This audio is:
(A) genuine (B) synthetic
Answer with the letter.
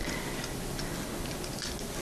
A